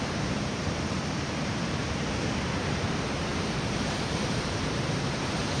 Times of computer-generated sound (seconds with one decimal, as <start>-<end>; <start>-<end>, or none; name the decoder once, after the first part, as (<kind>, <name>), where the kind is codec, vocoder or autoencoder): 0.0-1.8 (vocoder, BigVGAN v2); 2.9-5.6